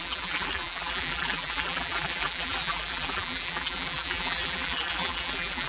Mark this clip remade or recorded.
remade